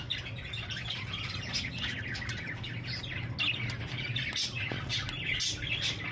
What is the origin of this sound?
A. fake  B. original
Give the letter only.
B